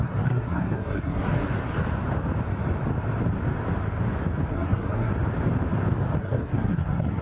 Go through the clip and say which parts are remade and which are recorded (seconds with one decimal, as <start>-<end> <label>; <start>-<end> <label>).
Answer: 0.0-1.3 remade; 1.3-4.5 recorded; 4.5-5.1 remade; 5.1-6.2 recorded; 6.2-7.2 remade